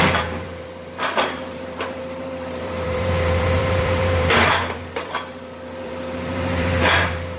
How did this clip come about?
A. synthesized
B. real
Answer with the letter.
A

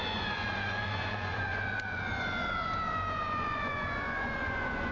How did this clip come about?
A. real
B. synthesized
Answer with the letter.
B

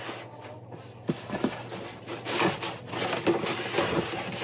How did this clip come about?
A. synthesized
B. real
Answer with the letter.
B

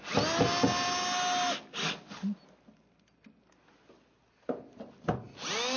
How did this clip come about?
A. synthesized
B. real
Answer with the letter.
B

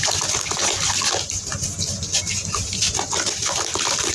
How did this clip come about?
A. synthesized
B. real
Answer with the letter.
B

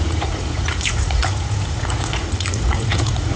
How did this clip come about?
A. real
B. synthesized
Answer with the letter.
B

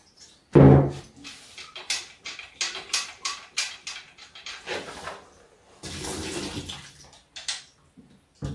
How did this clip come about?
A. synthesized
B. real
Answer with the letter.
B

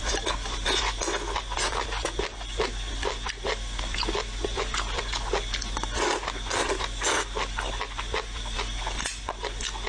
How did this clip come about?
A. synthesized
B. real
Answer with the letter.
B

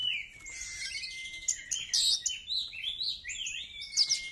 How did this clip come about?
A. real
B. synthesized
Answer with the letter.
A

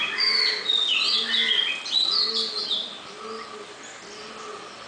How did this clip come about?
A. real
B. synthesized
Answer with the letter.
A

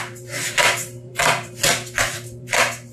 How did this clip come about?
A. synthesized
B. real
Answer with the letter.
A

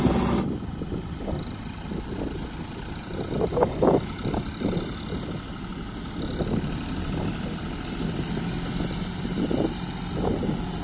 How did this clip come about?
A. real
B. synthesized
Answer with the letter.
A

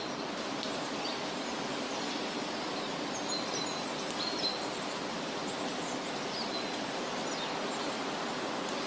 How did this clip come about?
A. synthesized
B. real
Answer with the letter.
B